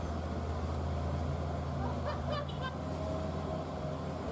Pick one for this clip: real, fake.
real